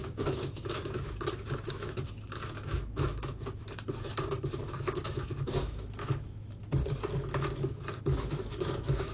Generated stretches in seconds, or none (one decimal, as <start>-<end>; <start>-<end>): 0.0-6.8; 8.0-9.1